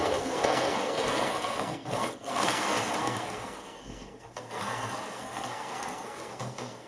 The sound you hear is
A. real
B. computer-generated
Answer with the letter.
B